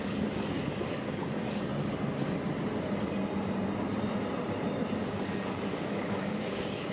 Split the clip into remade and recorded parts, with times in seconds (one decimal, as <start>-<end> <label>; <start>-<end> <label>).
0.0-1.7 remade; 1.7-5.0 recorded; 5.0-6.9 remade